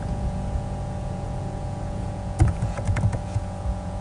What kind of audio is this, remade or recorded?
remade